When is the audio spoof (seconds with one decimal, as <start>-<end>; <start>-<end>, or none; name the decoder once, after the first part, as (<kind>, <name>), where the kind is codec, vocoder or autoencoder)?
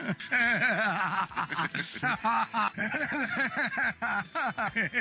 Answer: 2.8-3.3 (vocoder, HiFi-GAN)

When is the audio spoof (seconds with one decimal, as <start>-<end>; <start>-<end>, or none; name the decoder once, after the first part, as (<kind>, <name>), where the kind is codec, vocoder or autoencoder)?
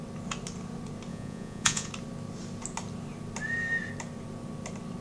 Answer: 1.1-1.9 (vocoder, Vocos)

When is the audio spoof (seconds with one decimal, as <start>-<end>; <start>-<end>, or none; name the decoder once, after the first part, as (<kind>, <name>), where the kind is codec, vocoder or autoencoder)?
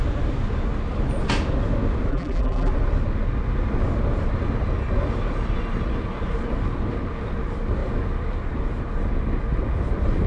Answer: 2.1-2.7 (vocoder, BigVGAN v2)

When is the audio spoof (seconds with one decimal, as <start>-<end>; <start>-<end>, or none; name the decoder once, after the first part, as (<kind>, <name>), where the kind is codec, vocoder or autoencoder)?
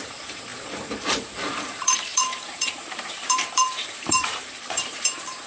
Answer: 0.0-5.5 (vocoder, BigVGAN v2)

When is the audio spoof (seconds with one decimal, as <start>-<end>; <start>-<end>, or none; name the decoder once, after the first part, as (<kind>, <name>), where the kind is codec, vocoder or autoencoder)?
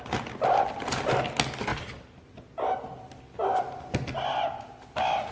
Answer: none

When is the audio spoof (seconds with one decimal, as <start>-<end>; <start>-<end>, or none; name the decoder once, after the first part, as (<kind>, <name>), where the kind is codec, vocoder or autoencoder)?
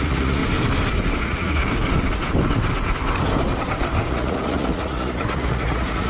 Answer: 0.0-0.4 (vocoder, Vocos); 1.2-1.6; 4.1-6.1